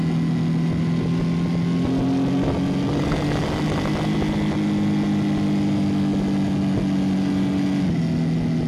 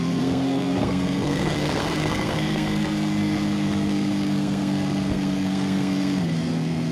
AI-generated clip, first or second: second